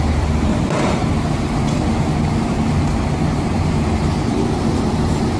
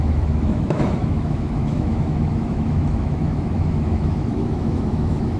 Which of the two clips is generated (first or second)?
second